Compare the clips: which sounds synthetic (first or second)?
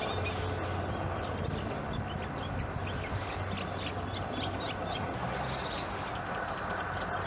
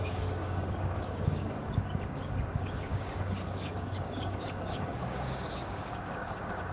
second